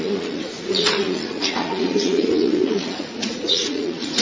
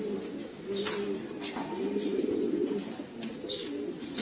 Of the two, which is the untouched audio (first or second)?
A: second